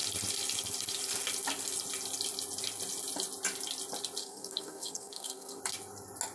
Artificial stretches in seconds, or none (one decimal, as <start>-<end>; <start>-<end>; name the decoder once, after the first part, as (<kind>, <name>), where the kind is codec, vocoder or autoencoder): 4.2-5.6 (codec, SNAC)